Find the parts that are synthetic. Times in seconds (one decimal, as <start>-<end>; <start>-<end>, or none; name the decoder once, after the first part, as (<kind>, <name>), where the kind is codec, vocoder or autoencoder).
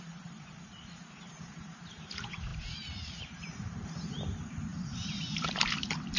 0.0-6.2 (vocoder, BigVGAN v2)